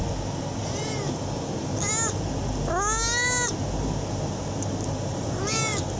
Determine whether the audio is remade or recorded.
recorded